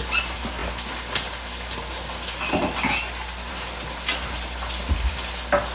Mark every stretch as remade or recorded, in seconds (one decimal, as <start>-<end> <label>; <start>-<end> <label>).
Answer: 0.0-5.7 recorded